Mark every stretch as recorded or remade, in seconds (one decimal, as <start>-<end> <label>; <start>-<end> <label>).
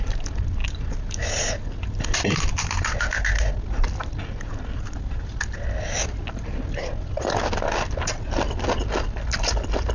0.0-9.9 recorded